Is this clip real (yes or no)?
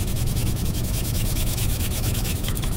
no